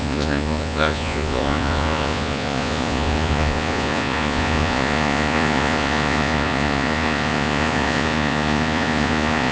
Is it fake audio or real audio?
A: fake